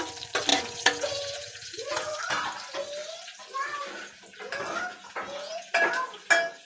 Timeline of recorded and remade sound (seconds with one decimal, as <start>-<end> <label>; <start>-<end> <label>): 0.0-0.5 recorded; 0.5-2.2 remade; 2.2-4.9 recorded; 4.9-5.7 remade; 5.7-6.6 recorded